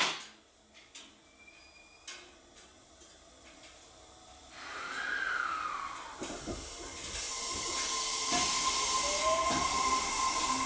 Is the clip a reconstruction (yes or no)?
no